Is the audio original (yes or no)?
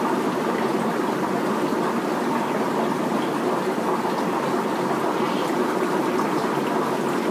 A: yes